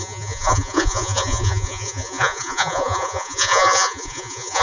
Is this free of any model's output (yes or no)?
no